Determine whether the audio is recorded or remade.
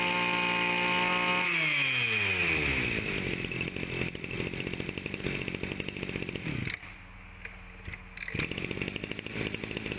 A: recorded